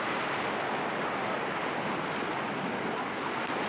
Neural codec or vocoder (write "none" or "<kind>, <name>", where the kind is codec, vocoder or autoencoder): none